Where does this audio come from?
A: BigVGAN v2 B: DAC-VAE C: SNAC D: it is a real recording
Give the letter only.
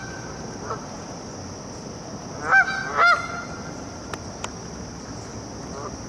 D